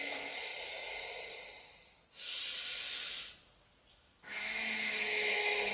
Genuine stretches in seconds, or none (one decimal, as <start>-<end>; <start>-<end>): 0.5-3.9